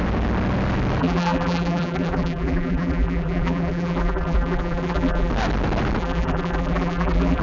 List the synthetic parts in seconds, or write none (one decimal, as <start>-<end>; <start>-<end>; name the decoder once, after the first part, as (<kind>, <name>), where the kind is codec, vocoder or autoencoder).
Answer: 1.0-5.3 (vocoder, BigVGAN v2); 6.0-7.4